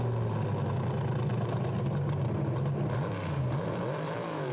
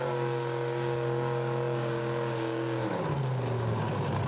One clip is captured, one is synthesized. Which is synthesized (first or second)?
second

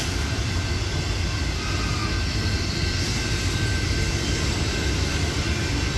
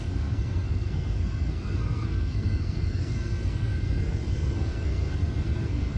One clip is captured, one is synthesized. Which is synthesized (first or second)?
second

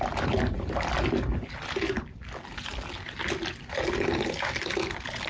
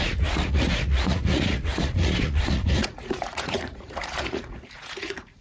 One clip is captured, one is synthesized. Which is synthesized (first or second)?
second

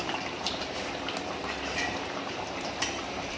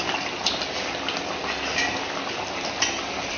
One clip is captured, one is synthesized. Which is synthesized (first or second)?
first